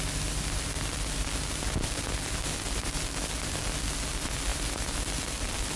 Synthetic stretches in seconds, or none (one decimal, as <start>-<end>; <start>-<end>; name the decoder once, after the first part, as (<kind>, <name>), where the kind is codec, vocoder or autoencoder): none